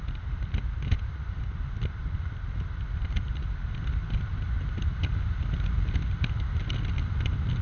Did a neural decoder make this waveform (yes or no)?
no